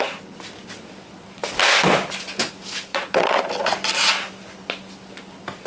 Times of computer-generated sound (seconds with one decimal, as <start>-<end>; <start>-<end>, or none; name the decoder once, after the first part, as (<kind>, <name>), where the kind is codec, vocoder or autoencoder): 2.9-3.4 (vocoder, Vocos)